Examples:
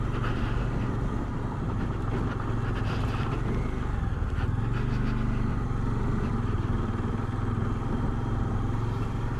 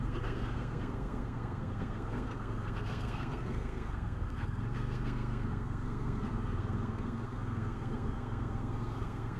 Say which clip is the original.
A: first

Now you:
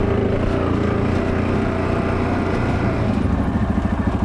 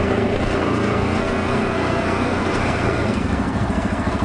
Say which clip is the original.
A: first